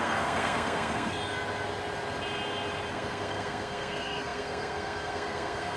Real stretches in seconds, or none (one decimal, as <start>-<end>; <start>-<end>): 1.2-2.9